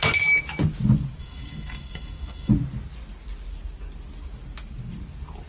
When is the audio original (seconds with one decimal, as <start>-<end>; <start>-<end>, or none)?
0.0-1.2; 2.5-5.5